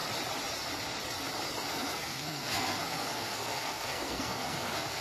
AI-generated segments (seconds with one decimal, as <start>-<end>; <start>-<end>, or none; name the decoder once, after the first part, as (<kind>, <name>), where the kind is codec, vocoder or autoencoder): 1.7-5.0 (codec, SNAC)